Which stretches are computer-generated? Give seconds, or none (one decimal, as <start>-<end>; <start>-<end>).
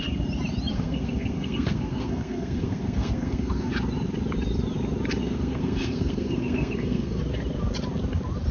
0.7-3.7; 5.2-7.2